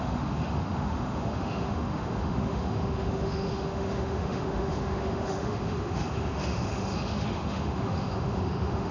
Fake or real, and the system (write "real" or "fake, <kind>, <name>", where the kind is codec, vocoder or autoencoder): fake, autoencoder, DAC-VAE